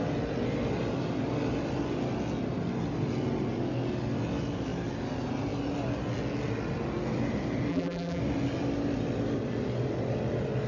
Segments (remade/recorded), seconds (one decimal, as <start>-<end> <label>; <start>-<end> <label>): 0.0-7.7 recorded; 7.7-8.2 remade; 8.2-10.7 recorded